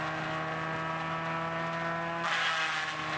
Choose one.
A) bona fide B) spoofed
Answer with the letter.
A